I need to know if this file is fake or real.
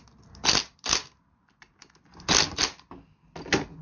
real